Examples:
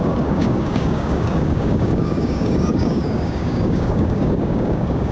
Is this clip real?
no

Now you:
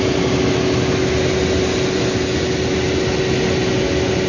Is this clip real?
yes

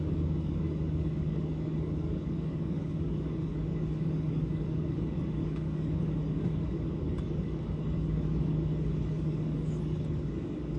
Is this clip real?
no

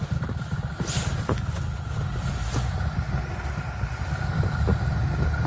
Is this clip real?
yes